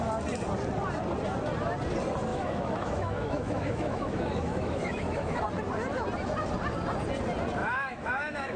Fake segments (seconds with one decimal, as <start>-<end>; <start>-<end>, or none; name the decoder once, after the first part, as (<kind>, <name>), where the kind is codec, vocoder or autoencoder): 2.3-5.4 (autoencoder, DAC-VAE); 7.6-8.6